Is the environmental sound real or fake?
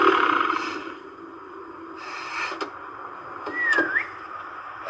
real